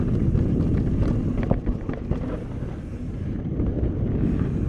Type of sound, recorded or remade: recorded